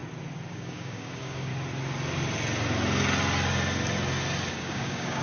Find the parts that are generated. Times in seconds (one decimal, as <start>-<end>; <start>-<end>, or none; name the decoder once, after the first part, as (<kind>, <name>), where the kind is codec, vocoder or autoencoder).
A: 0.5-1.5 (codec, DAC); 4.5-5.2